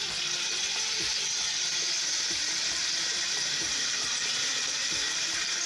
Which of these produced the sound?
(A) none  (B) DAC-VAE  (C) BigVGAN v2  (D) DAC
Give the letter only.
C